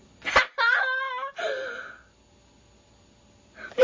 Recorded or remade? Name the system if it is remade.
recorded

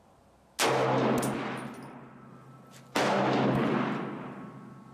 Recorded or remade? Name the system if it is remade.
recorded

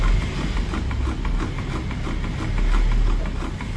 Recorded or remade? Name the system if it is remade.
recorded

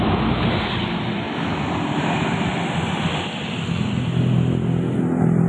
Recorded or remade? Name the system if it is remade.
recorded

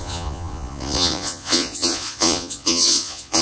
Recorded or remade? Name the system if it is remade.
remade, vocoder, Vocos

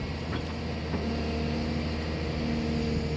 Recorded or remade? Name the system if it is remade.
recorded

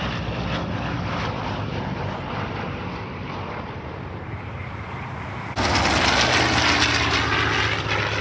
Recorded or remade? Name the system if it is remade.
recorded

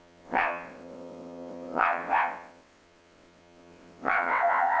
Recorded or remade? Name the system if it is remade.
remade, vocoder, WaveNeXt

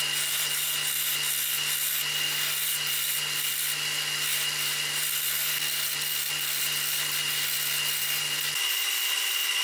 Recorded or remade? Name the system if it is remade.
recorded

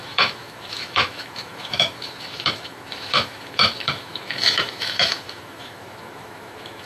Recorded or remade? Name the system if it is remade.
remade, autoencoder, DAC-VAE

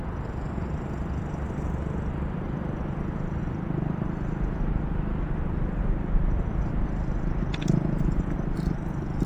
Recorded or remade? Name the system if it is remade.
recorded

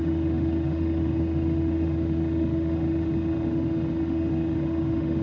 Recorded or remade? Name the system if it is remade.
remade, autoencoder, DAC-VAE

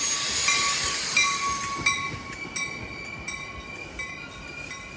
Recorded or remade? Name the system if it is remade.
recorded